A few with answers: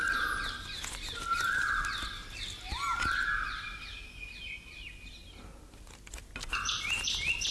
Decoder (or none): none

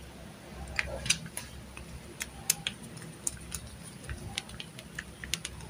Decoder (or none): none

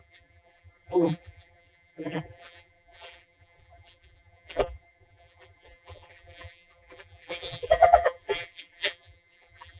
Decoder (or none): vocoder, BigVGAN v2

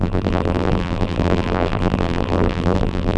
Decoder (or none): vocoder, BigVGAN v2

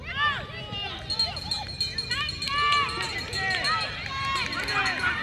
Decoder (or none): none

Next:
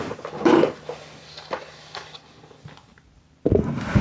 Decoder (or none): none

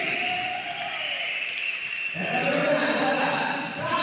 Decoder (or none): vocoder, BigVGAN v2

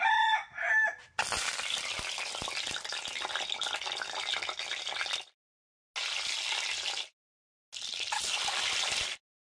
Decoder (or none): none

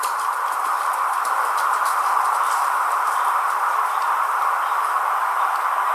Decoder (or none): vocoder, BigVGAN v2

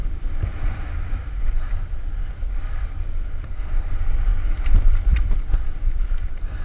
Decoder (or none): vocoder, BigVGAN v2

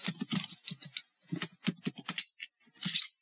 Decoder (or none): none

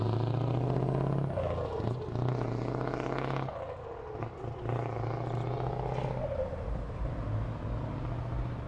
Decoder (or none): none